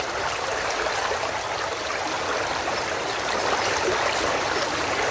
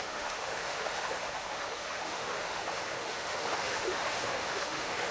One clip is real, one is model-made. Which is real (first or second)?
first